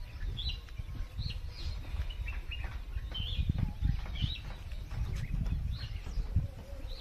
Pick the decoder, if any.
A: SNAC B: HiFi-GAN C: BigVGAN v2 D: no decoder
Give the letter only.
D